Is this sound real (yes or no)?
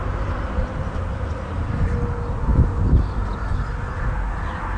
yes